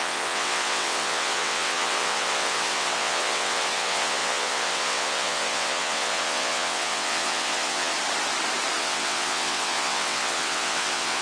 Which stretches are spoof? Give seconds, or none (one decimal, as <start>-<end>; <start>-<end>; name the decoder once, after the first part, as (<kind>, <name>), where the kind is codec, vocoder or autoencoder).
0.0-7.9 (vocoder, WaveNeXt); 8.8-11.2